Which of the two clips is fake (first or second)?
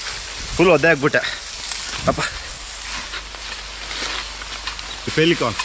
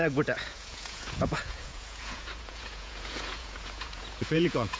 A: second